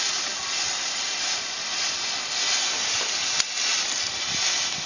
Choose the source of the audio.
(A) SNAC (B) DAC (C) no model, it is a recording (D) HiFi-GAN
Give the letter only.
C